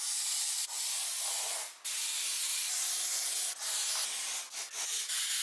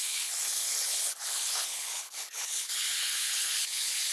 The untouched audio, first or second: first